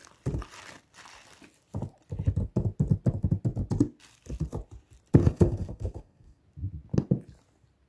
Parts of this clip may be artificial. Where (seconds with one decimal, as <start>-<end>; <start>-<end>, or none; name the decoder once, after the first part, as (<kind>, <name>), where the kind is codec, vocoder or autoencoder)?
5.2-6.4 (codec, SNAC)